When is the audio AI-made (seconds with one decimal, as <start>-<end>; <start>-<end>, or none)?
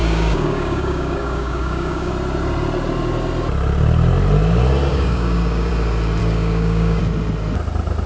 0.0-2.1; 4.9-5.7; 6.2-7.0